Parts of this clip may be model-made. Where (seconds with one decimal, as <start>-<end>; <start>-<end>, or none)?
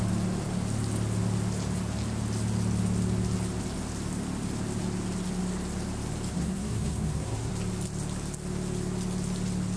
6.3-7.5